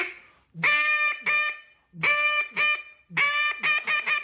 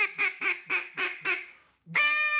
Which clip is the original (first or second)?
first